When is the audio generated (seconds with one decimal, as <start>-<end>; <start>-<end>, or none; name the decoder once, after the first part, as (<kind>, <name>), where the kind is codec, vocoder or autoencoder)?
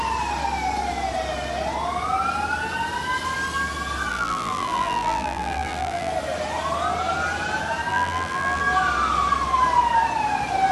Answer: 4.1-6.1 (vocoder, BigVGAN v2); 7.9-8.6